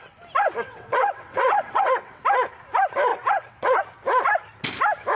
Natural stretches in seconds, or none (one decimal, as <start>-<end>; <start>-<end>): 0.0-0.4; 2.2-3.1; 3.8-5.1